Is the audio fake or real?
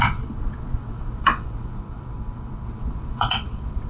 fake